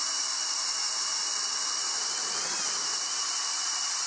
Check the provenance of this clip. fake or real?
real